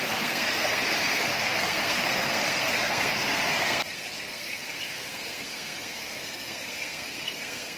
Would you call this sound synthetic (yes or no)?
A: yes